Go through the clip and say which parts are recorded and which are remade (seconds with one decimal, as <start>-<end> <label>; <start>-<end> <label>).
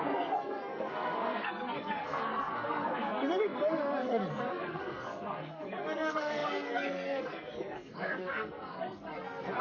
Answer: 0.0-9.6 remade